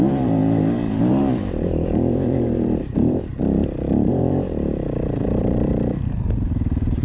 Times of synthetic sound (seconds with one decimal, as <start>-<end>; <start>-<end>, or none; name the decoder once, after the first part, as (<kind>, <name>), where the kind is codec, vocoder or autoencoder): 0.0-3.3 (vocoder, BigVGAN v2); 4.1-7.0